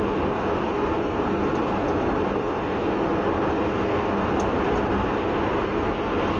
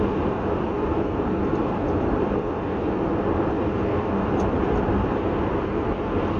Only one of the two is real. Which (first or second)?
first